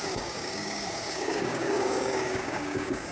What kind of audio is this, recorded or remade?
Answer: remade